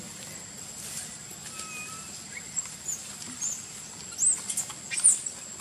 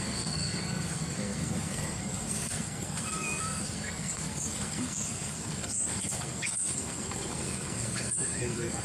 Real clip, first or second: first